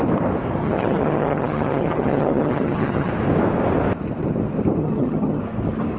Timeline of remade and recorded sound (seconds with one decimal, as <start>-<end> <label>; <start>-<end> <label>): 0.0-0.6 recorded; 0.6-3.1 remade; 3.1-4.8 recorded; 4.8-5.4 remade; 5.4-6.0 recorded